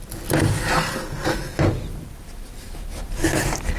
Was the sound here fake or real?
real